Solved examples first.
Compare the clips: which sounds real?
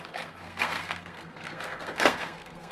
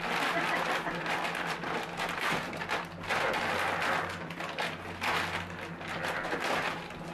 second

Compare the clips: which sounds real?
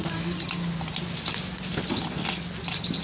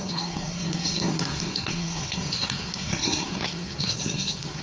first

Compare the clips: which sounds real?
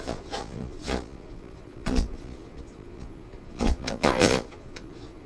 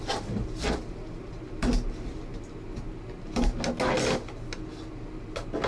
second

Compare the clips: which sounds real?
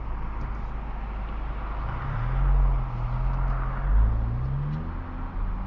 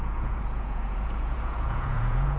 first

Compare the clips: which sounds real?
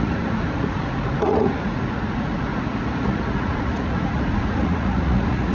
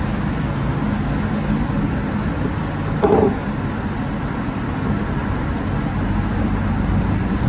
second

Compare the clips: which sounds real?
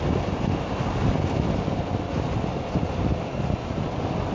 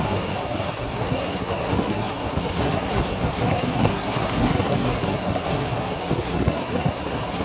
first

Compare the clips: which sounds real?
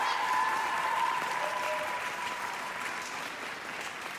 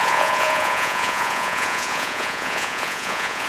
first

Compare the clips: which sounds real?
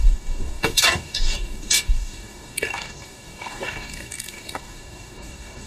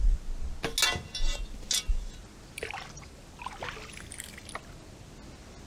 second